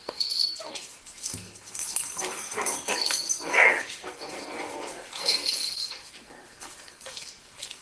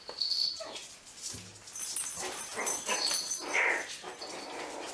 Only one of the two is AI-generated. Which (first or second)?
first